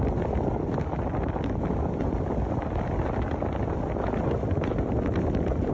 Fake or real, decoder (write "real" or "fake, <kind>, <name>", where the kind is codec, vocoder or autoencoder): real